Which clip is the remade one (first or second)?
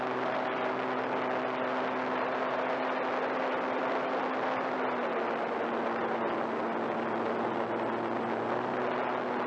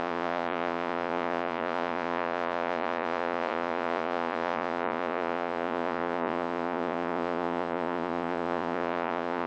second